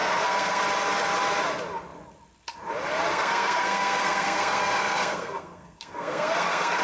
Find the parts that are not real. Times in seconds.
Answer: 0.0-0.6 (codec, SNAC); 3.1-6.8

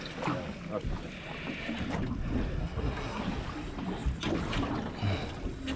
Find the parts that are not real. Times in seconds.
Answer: 2.6-3.2 (codec, SNAC)

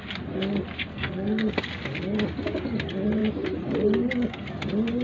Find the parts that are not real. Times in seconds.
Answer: 0.9-1.5 (codec, SNAC)

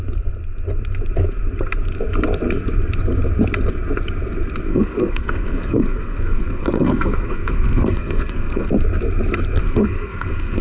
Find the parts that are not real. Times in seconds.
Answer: 4.7-8.7 (codec, SNAC); 9.6-10.6

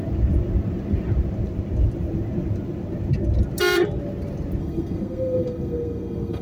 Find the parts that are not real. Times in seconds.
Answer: 4.6-6.4 (codec, SNAC)

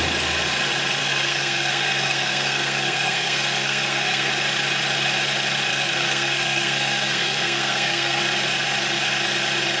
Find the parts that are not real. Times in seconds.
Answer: 1.0-4.3 (codec, SNAC); 5.7-8.2

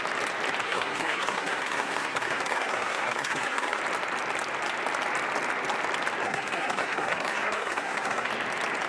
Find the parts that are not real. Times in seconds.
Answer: 0.6-3.8 (codec, SNAC); 6.2-8.3